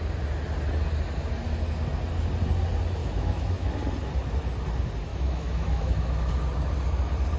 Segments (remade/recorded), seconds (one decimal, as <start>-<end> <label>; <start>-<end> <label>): 0.0-3.0 recorded; 3.0-3.7 remade; 3.7-5.1 recorded; 5.1-6.3 remade; 6.3-7.4 recorded